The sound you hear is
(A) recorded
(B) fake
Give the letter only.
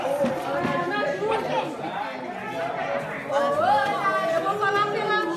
A